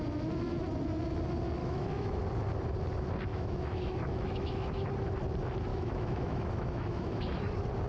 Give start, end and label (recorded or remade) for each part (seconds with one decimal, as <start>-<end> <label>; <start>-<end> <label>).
0.0-1.6 recorded; 1.6-2.2 remade; 2.2-3.3 recorded; 3.3-4.9 remade; 4.9-5.7 recorded; 5.7-7.4 remade; 7.4-7.9 recorded